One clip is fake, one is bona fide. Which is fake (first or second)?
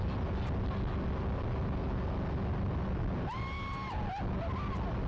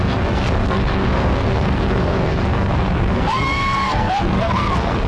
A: second